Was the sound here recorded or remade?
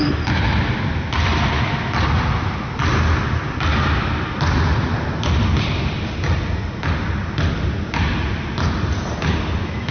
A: recorded